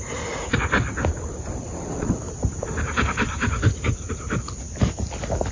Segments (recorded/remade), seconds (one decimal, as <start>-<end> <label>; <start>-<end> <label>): 0.0-1.6 recorded; 1.6-2.2 remade; 2.2-5.5 recorded